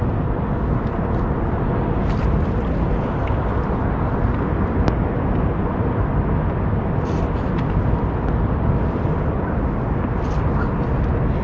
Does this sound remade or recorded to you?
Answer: recorded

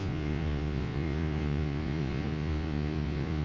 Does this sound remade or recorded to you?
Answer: remade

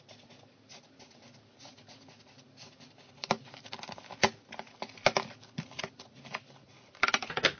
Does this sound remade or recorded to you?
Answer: recorded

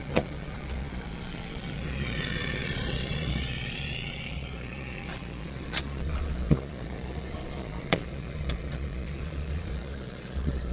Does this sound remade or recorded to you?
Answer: remade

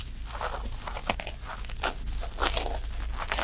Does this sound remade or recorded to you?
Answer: recorded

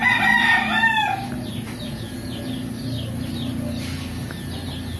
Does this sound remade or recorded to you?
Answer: recorded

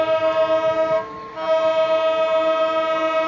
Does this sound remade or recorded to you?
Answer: recorded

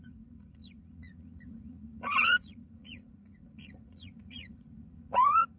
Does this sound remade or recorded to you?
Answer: remade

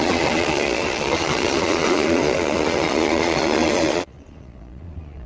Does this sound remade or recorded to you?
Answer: remade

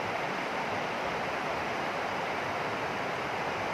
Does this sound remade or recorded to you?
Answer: recorded